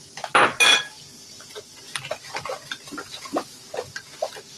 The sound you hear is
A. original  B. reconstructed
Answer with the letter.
A